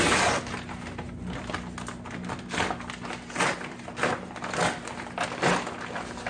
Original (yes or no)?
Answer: yes